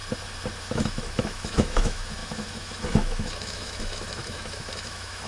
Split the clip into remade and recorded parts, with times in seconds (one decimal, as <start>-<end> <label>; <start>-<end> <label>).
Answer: 0.0-0.6 recorded; 0.6-5.3 remade